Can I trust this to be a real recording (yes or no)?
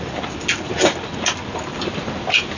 yes